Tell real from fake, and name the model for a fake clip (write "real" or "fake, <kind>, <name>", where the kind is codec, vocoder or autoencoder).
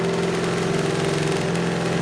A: real